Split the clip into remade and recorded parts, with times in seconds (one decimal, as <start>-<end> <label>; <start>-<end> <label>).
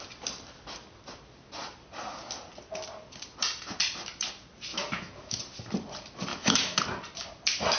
0.0-4.7 recorded; 4.7-5.4 remade; 5.4-6.3 recorded; 6.3-6.8 remade; 6.8-7.8 recorded